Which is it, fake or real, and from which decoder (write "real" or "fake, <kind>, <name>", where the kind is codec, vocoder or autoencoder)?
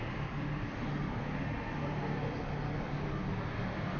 real